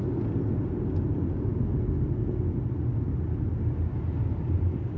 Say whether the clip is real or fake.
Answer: real